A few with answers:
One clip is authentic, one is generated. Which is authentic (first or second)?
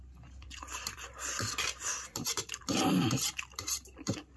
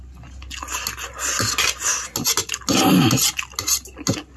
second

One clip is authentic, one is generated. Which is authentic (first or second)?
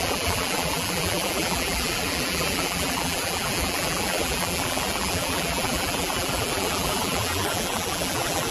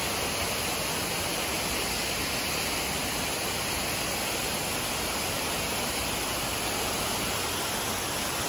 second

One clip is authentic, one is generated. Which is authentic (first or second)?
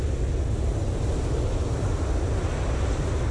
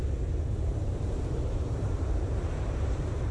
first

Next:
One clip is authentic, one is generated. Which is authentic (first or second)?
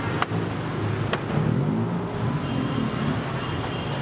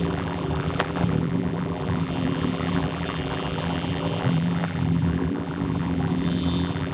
first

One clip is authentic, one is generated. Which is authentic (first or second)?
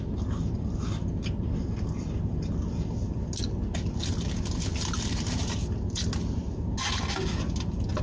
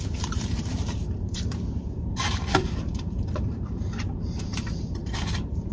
first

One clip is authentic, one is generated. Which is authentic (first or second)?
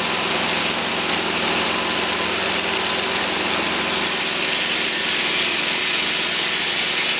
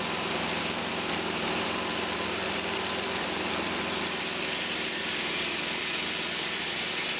first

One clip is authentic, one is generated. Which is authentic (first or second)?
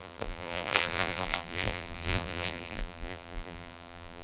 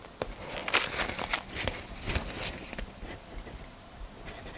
second